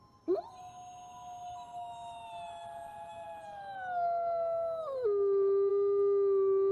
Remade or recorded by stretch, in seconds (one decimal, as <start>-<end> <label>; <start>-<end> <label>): 0.0-6.7 recorded